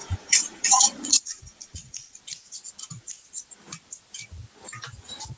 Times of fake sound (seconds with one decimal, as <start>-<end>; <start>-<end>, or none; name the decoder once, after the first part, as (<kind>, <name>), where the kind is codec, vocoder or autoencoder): 0.0-2.2 (vocoder, Vocos)